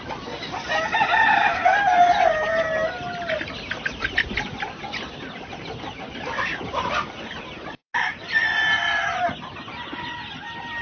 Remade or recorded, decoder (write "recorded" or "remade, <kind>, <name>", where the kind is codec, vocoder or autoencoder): recorded